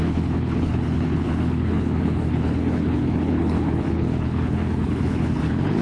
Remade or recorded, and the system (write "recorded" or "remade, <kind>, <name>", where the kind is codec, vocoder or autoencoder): remade, codec, HILCodec